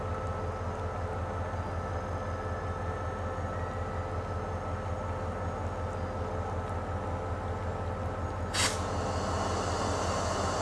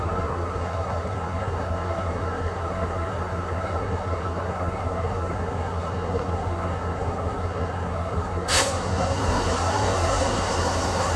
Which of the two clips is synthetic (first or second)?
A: second